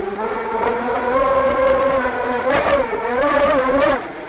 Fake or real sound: fake